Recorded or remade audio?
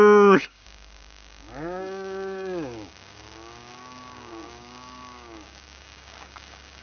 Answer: remade